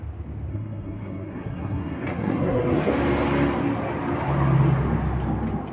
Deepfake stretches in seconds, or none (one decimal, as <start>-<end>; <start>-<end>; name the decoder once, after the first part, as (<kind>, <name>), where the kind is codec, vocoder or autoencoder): 0.5-2.9 (codec, SNAC)